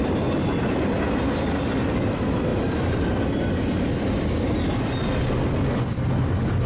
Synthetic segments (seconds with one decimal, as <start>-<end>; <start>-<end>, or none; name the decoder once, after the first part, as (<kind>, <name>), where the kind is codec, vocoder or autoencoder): none